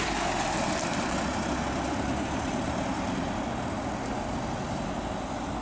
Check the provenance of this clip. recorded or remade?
recorded